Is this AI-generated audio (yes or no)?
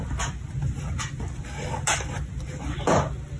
no